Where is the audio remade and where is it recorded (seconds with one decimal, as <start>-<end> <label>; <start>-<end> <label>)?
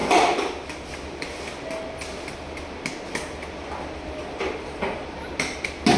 0.0-6.0 recorded